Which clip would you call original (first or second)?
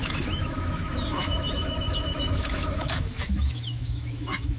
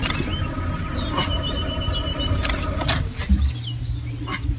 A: second